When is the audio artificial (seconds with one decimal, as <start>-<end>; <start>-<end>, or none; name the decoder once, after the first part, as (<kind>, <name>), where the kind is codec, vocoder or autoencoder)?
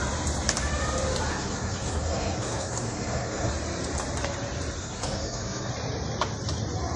1.3-3.5 (codec, SNAC); 4.8-5.7